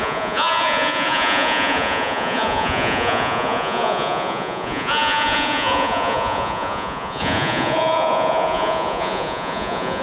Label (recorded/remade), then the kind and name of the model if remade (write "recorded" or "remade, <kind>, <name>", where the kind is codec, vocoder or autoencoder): remade, vocoder, Vocos